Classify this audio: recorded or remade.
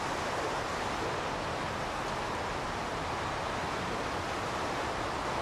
recorded